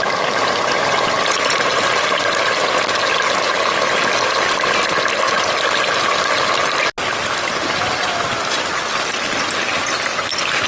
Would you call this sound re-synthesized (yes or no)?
no